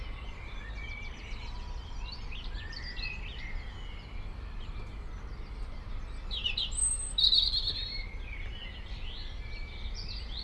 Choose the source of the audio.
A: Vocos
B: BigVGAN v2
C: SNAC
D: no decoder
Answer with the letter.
B